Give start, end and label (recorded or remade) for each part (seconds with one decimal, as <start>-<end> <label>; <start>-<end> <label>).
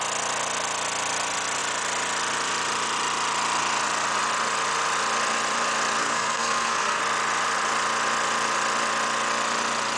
0.0-6.0 recorded; 6.0-7.0 remade; 7.0-10.0 recorded